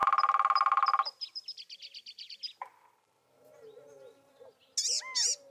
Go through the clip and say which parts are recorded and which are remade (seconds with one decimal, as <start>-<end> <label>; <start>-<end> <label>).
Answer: 0.0-3.3 remade; 3.3-5.5 recorded